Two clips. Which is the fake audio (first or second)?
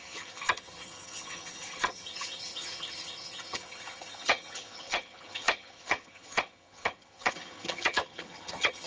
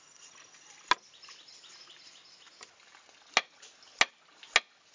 first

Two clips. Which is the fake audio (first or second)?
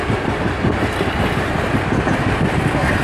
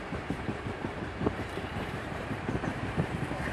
second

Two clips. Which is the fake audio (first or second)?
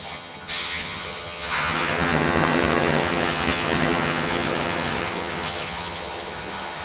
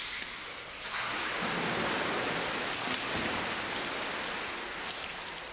first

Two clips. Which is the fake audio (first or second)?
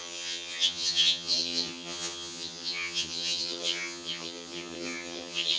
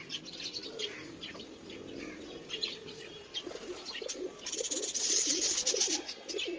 first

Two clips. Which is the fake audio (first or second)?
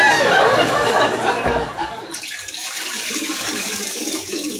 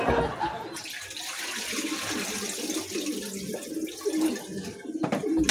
first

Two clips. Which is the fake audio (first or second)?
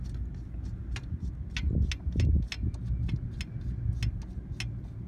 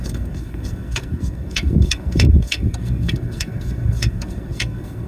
second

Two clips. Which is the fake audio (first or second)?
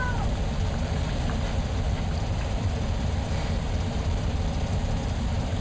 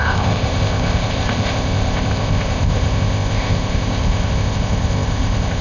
second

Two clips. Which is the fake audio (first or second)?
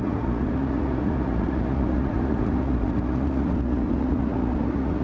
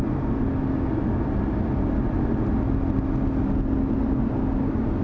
first